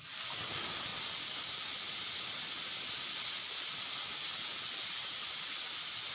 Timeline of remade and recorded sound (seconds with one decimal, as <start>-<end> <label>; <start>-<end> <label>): 0.0-6.1 recorded